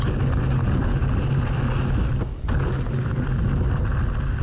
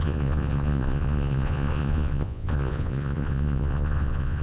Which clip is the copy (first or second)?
second